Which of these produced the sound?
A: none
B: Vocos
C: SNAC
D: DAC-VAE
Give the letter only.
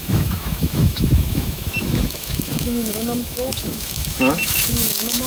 D